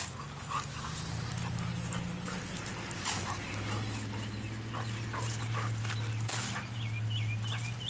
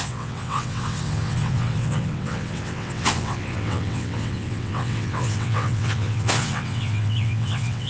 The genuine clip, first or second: first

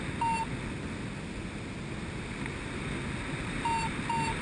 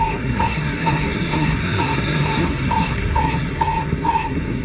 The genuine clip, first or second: first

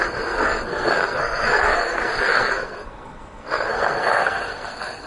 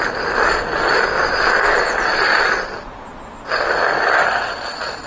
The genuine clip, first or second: second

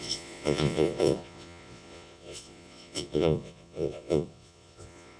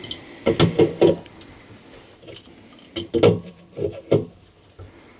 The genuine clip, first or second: second